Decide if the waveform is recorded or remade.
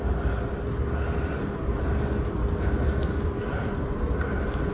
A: recorded